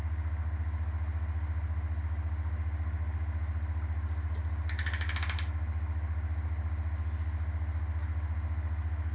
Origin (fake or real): real